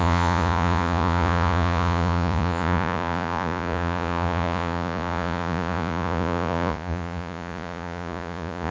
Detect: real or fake fake